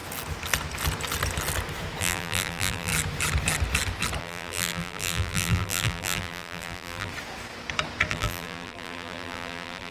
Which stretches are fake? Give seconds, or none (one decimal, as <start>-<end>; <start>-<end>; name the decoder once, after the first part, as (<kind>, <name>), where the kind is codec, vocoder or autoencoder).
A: 2.0-2.9 (vocoder, BigVGAN v2); 4.2-7.1; 8.1-9.9